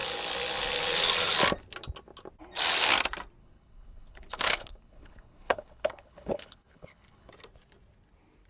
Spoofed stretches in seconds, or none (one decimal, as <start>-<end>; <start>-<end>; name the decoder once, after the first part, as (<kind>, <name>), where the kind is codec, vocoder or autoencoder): 3.4-7.3 (codec, HILCodec)